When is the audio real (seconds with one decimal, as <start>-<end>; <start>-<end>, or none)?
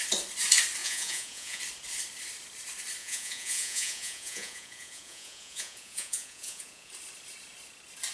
0.0-0.8; 1.6-3.0; 6.9-8.1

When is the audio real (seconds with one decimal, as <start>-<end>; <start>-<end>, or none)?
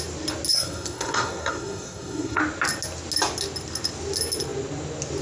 0.0-0.5; 2.4-5.2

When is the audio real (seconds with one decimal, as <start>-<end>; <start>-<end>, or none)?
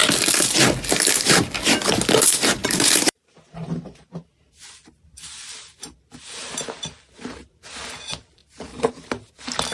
0.0-2.6; 6.7-8.4; 8.9-9.7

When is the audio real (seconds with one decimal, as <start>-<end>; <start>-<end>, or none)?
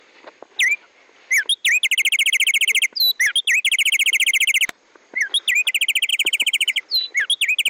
0.0-6.1; 6.8-7.7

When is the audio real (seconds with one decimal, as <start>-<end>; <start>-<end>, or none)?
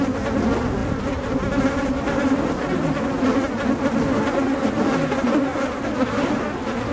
0.0-6.9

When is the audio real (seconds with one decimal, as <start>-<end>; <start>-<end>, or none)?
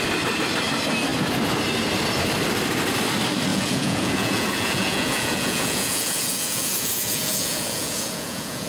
0.0-3.5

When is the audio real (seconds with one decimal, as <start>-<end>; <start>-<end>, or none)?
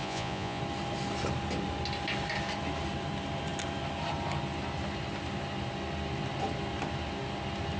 0.6-7.8